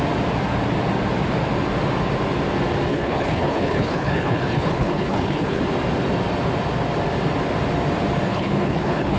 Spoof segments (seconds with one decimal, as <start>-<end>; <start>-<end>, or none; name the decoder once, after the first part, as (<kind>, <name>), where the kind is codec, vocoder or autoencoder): 2.9-5.6 (codec, HILCodec); 8.3-9.2